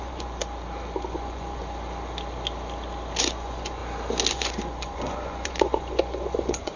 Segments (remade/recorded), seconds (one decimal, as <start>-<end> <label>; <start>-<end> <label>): 0.0-0.4 remade; 0.4-1.1 recorded; 1.1-1.6 remade; 1.6-3.2 recorded; 3.2-3.8 remade; 3.8-4.3 recorded; 4.3-6.8 remade